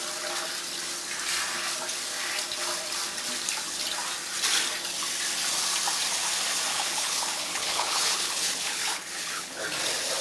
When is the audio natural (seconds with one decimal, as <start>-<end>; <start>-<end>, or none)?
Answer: 0.0-6.7; 9.6-10.2